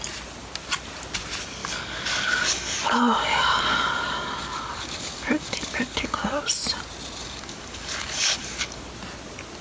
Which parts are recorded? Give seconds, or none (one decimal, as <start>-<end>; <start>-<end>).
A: 0.0-1.6; 6.4-7.2; 8.8-9.6